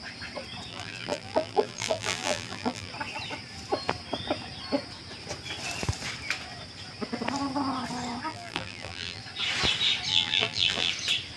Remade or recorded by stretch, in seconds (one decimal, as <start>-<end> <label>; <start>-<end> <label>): 0.0-0.7 recorded; 0.7-2.9 remade; 2.9-8.3 recorded; 8.3-9.2 remade; 9.2-10.1 recorded; 10.1-10.9 remade; 10.9-11.4 recorded